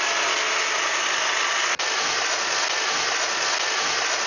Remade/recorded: recorded